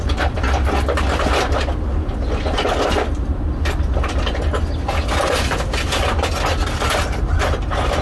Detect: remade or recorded recorded